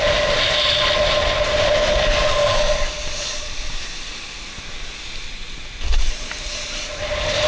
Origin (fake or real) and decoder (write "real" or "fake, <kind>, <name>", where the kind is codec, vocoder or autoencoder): real